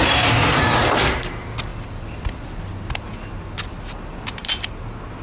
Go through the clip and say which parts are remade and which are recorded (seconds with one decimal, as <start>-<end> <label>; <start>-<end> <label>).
0.0-5.2 recorded